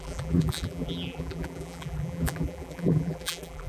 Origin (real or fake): fake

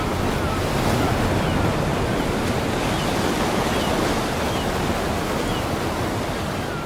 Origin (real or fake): real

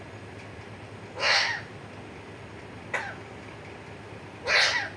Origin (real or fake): real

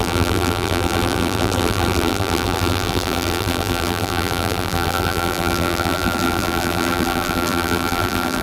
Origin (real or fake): fake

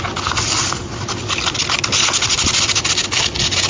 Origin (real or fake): real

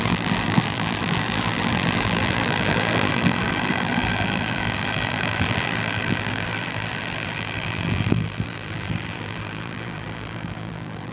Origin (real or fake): fake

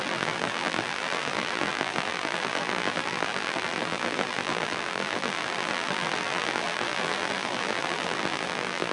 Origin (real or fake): fake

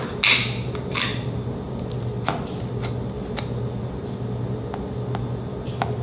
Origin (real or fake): real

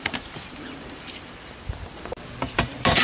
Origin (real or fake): fake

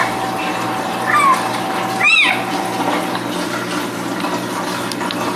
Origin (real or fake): real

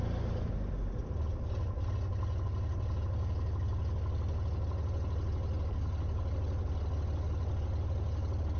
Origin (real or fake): real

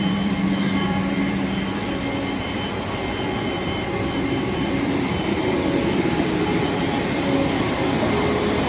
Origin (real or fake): fake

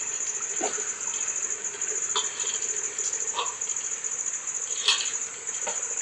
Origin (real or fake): real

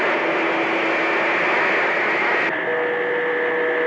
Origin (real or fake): real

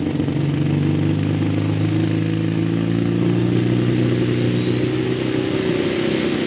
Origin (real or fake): real